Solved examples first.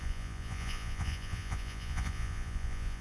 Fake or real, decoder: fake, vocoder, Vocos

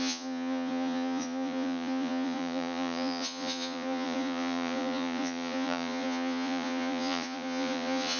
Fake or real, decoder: fake, vocoder, Vocos